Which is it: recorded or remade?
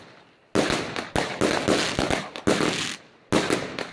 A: recorded